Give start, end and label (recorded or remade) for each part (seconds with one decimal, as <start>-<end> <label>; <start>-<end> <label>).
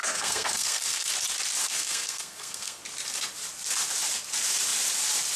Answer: 0.0-1.1 remade; 1.1-1.6 recorded; 1.6-2.8 remade; 2.8-5.4 recorded